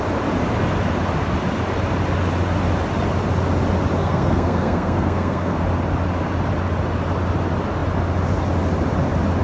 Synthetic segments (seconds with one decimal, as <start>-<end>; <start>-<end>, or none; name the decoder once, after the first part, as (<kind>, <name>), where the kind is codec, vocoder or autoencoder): 4.0-5.6 (codec, SNAC)